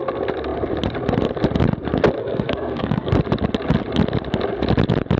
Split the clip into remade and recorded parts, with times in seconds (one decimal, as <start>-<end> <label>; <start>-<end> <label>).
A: 0.0-2.2 recorded; 2.2-3.1 remade; 3.1-5.2 recorded